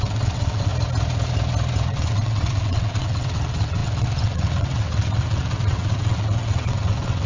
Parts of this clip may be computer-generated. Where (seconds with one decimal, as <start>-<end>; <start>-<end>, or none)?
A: 0.0-0.7; 1.9-7.3